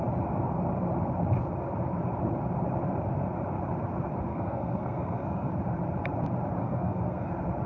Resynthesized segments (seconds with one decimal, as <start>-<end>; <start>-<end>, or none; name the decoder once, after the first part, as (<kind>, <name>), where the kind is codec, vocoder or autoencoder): 4.3-5.5 (codec, SNAC); 6.6-7.3